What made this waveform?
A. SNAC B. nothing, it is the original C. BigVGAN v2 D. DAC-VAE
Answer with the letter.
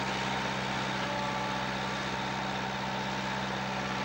B